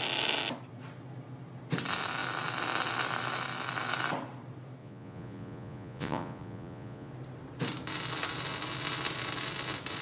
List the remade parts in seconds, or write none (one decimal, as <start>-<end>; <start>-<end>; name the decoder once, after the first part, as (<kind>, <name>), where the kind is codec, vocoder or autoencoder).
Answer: 4.8-7.1 (vocoder, Vocos)